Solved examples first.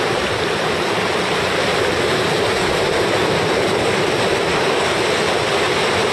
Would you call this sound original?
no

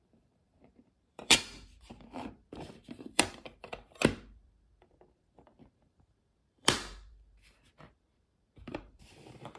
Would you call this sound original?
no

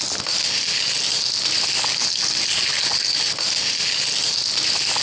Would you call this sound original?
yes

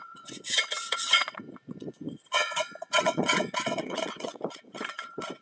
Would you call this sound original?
no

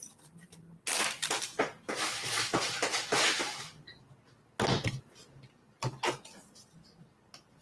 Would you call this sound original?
yes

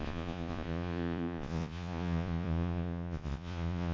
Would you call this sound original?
no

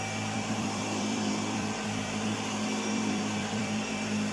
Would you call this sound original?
no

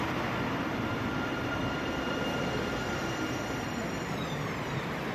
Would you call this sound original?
no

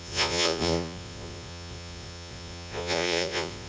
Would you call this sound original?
no